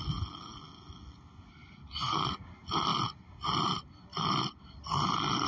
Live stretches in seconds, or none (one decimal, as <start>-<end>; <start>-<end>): 0.0-5.5